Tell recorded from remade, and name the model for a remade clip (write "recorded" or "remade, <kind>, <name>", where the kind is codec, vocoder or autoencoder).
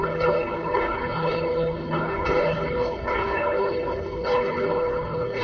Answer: remade, codec, HILCodec